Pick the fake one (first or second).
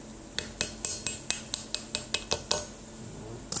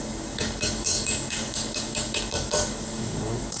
second